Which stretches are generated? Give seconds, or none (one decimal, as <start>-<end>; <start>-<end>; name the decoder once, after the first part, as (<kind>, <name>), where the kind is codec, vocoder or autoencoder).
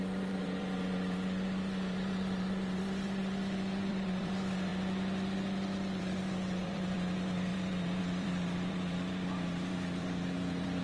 0.0-4.7 (vocoder, BigVGAN v2); 6.0-10.8